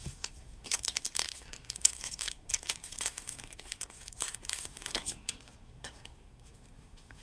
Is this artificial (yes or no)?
yes